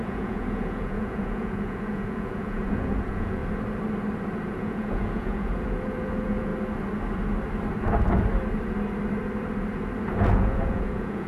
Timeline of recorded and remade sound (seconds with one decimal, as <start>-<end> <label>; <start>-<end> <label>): 0.0-3.4 remade; 3.4-4.5 recorded; 4.5-6.5 remade; 6.5-10.2 recorded; 10.2-11.3 remade